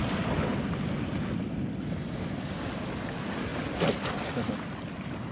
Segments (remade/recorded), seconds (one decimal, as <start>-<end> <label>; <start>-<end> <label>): 0.0-5.3 recorded